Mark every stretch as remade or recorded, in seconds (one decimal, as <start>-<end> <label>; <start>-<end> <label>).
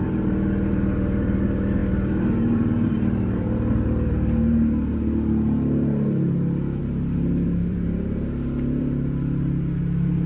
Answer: 0.0-10.3 remade